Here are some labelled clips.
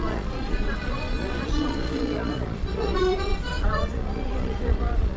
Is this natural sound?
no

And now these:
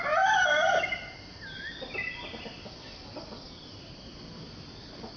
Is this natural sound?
yes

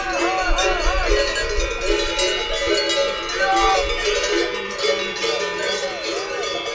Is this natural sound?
yes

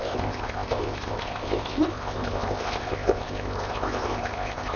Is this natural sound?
no